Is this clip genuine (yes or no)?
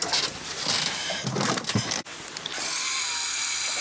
yes